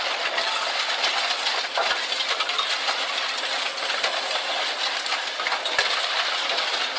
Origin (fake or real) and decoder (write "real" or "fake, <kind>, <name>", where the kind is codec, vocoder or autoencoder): real